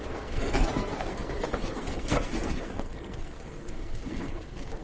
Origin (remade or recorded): remade